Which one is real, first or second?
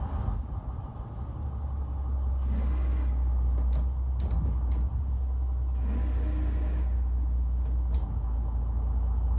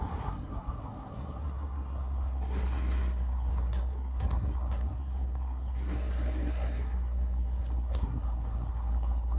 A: first